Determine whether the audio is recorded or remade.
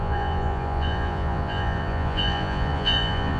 remade